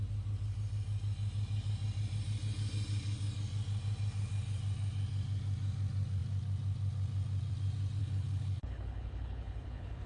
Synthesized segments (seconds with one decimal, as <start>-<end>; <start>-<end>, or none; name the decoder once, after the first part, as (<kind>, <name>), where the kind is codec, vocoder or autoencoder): 8.0-10.1 (codec, HILCodec)